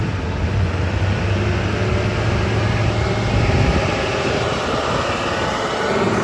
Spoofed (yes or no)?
no